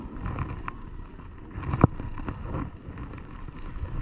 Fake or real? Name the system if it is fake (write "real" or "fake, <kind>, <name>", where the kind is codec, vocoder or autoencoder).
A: real